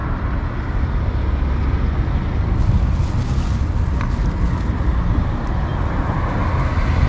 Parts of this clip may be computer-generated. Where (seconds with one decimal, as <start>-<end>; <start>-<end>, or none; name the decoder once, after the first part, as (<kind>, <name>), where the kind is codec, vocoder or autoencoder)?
none